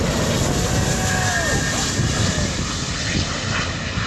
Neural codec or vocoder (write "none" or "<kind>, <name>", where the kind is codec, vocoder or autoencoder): none